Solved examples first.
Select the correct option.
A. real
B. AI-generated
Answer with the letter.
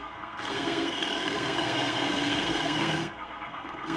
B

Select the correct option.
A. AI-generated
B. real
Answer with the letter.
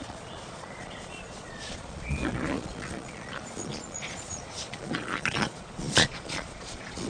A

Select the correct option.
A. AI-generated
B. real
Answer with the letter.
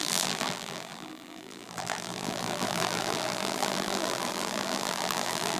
A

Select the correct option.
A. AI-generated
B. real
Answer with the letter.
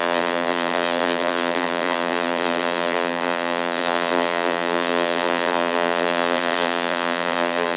A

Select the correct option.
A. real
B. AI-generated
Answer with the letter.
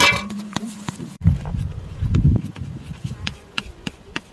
B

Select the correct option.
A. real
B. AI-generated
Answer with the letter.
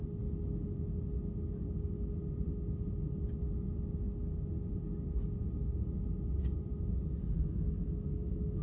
A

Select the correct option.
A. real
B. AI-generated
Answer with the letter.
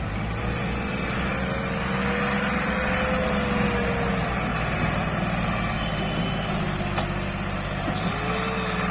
A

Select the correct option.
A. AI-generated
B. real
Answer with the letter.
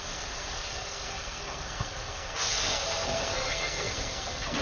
A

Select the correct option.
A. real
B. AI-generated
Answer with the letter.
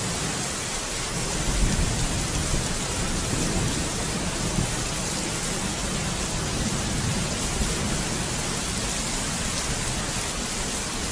A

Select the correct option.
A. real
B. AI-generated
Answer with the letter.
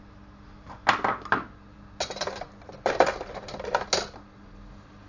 A